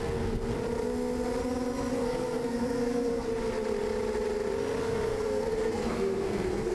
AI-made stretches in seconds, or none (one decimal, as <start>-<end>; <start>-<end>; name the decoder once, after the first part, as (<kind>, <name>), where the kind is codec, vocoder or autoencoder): 0.0-0.5 (codec, SNAC); 1.9-3.3; 4.8-6.7